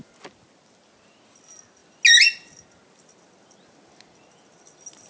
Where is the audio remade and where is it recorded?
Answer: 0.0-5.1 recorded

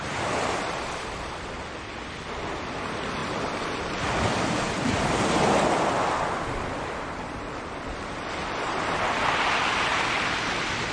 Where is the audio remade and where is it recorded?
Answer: 0.0-10.9 recorded

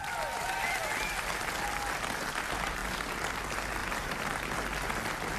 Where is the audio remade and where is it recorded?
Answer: 0.0-3.8 recorded; 3.8-4.5 remade; 4.5-5.4 recorded